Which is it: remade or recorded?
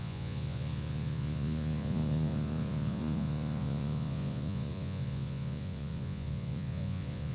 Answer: remade